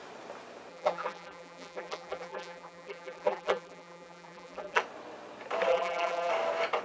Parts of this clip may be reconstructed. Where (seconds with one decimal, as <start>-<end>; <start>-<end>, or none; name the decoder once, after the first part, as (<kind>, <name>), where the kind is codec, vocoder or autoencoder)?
0.7-4.8 (vocoder, BigVGAN v2); 5.7-6.3